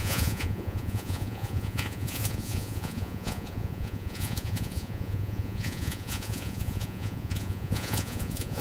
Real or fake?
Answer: fake